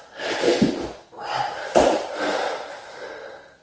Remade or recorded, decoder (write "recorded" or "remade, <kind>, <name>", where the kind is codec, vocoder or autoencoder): recorded